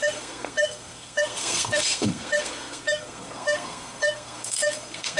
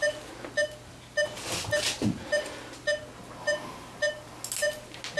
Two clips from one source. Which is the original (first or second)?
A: second